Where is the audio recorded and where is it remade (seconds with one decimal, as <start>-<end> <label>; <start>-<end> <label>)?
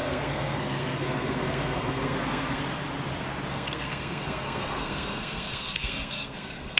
0.0-2.6 remade; 2.6-3.5 recorded; 3.5-6.8 remade